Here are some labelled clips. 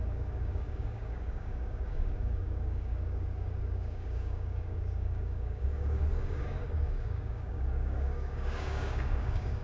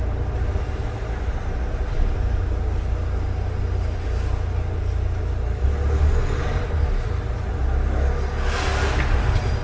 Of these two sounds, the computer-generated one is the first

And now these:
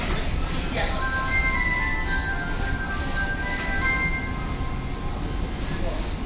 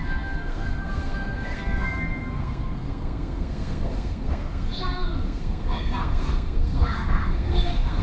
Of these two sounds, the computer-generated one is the second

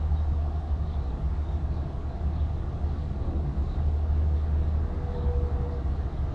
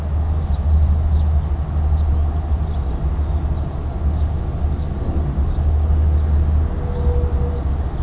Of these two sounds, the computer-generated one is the first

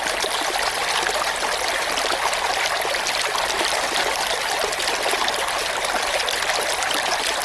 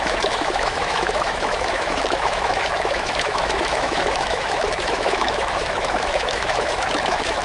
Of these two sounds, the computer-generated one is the second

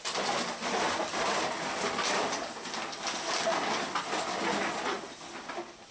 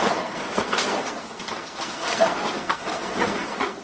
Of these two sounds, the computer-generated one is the second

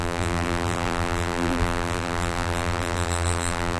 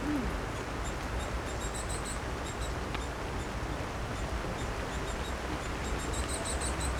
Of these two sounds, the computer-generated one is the first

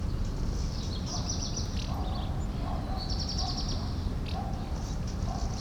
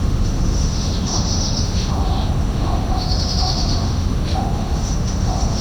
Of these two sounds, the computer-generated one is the second